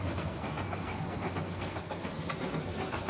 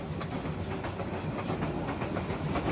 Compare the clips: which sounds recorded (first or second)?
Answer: second